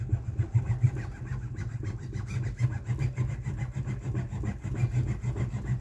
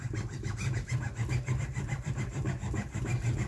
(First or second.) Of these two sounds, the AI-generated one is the second